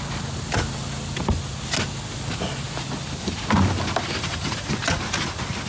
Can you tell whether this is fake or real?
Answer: real